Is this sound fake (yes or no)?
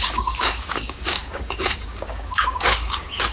yes